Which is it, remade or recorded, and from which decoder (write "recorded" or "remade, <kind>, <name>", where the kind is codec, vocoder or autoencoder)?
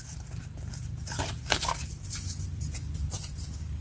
remade, vocoder, BigVGAN v2